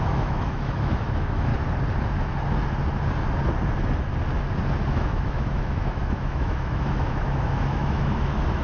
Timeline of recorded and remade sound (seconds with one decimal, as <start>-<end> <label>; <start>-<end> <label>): 0.0-1.5 remade; 1.5-4.9 recorded; 4.9-8.6 remade

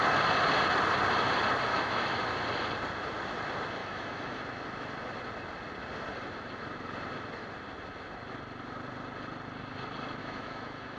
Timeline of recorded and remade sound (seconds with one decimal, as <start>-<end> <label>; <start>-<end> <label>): 0.0-1.7 recorded; 1.7-2.2 remade; 2.2-3.8 recorded; 3.8-4.4 remade; 4.4-10.2 recorded; 10.2-11.0 remade